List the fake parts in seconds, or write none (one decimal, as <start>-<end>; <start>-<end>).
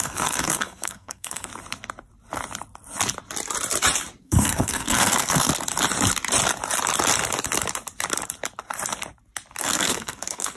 0.0-1.5; 4.2-5.5; 9.6-10.6